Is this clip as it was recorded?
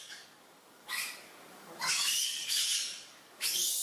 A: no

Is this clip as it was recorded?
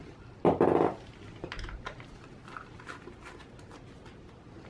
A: yes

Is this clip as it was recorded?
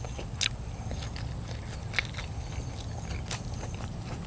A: yes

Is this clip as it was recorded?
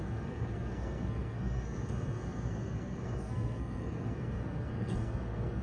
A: no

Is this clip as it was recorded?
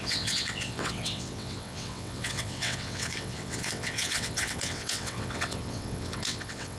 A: no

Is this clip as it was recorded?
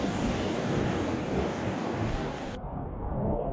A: no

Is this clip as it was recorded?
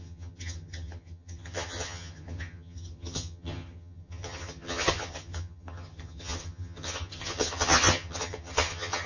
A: no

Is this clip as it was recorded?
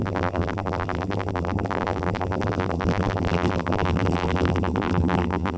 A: no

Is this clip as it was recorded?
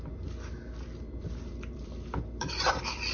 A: no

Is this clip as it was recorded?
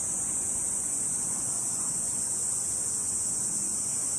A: no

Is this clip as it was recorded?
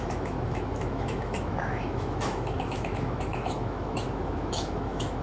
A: no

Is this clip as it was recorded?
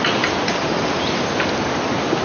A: yes